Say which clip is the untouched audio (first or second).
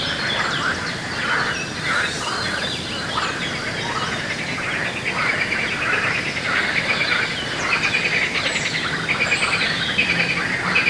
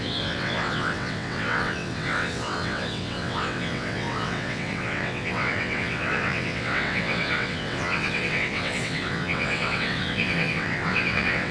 first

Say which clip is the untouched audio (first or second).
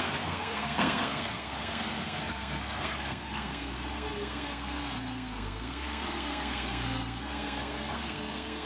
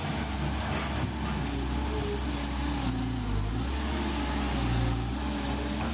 second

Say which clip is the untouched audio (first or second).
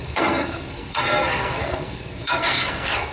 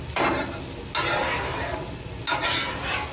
second